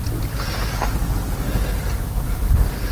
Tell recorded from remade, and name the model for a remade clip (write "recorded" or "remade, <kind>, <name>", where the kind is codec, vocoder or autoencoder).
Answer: recorded